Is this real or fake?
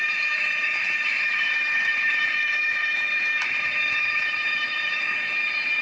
fake